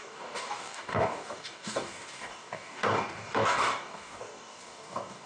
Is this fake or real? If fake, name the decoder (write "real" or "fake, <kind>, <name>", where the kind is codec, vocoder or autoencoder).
fake, codec, DAC